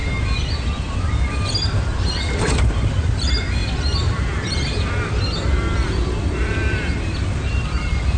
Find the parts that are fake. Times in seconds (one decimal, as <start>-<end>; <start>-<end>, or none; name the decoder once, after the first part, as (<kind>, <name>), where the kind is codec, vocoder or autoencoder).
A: 0.6-8.2 (vocoder, BigVGAN v2)